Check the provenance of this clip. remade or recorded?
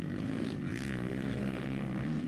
remade